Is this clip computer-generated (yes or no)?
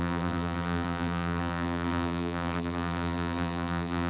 yes